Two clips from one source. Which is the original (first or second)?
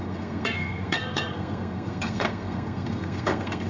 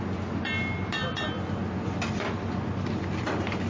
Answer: second